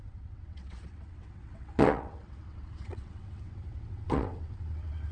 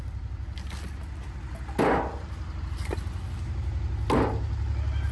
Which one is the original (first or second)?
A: second